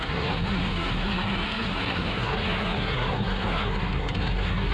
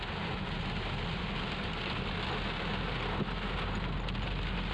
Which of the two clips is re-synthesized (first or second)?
first